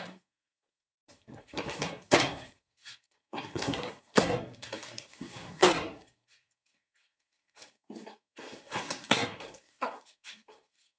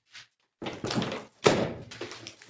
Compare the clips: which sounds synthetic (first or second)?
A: first